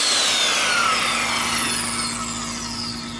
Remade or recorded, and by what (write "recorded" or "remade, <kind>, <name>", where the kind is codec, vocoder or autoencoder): recorded